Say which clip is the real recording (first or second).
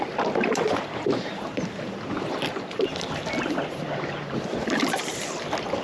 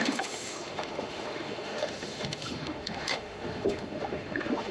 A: first